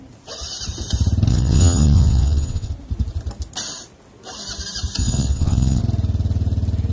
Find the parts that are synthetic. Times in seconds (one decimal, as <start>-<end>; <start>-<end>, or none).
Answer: 1.3-2.7; 5.0-5.8